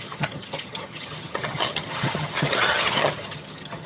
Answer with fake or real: fake